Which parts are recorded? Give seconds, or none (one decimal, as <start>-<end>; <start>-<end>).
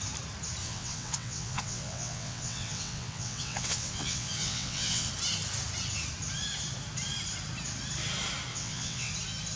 0.0-0.6; 5.1-8.5; 9.1-9.6